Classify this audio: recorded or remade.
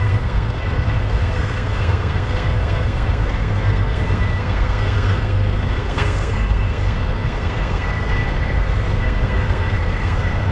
remade